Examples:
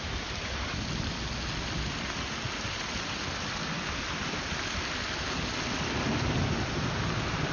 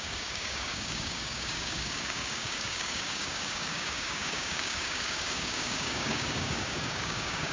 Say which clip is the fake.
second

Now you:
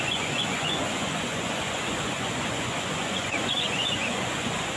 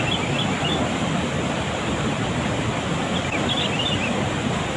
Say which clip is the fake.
first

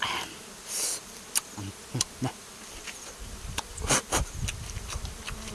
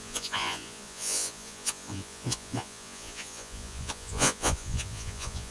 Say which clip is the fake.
second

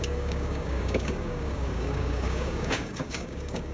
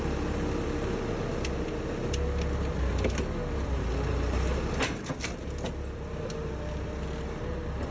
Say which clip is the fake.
first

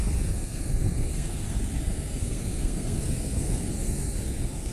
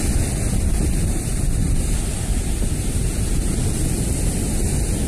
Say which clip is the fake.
first